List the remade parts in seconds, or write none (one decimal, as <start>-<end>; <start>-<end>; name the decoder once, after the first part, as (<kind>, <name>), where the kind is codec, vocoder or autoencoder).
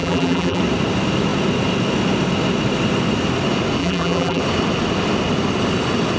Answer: 0.0-0.6 (vocoder, BigVGAN v2); 3.8-4.4